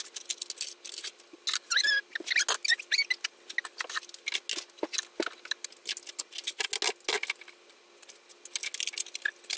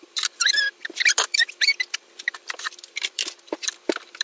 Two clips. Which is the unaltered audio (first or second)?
first